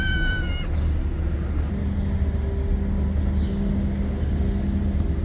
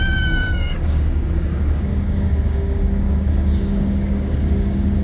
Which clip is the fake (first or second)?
second